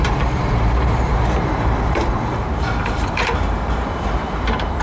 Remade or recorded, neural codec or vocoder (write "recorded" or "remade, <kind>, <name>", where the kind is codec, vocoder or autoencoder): remade, vocoder, BigVGAN v2